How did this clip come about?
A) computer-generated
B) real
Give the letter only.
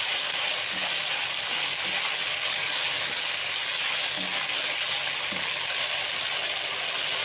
B